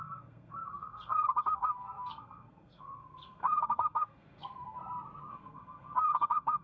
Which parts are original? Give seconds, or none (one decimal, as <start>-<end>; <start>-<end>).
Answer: 4.8-5.3